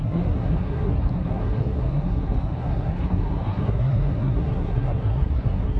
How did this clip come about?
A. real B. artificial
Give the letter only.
B